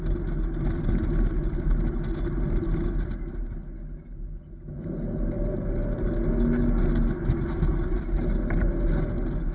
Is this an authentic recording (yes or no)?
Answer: yes